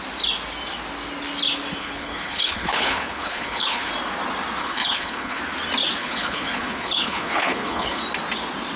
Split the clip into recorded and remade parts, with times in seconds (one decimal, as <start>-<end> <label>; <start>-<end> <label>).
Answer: 0.0-1.8 recorded; 1.8-3.9 remade; 3.9-4.6 recorded; 4.6-5.4 remade; 5.4-6.0 recorded; 6.0-8.0 remade; 8.0-8.8 recorded